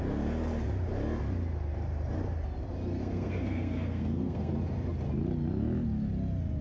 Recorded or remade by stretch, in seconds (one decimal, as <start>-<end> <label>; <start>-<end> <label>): 0.0-3.0 recorded; 3.0-4.5 remade; 4.5-6.6 recorded